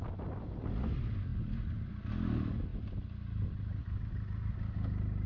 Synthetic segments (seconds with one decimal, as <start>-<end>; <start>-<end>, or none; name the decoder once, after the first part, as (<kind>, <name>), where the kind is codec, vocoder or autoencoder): none